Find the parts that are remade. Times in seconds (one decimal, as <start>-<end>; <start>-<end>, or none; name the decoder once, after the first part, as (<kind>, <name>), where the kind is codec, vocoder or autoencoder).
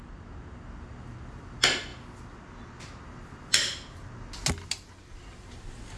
none